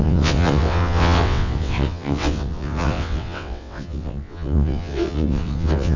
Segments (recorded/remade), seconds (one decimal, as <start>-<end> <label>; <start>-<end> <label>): 0.0-6.0 remade